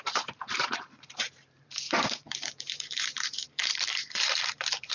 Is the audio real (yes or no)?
no